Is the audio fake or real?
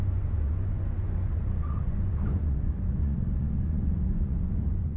fake